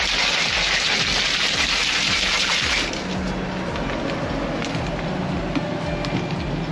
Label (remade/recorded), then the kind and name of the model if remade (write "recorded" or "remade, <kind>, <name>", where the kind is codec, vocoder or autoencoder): recorded